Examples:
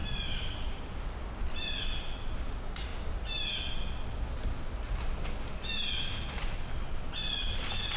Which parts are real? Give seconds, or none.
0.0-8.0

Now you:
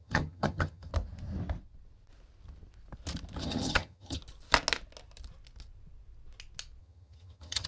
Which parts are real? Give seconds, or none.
0.9-3.4; 4.2-6.8

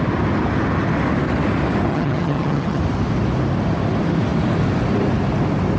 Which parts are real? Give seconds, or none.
0.0-1.9; 2.8-5.8

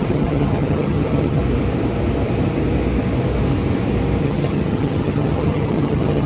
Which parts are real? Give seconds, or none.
1.4-4.2

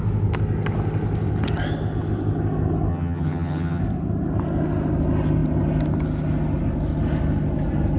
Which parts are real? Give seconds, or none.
0.0-2.9; 3.8-8.0

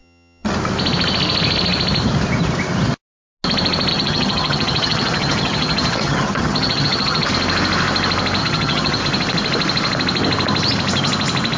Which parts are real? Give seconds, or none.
0.5-3.9; 7.3-8.4; 9.0-11.6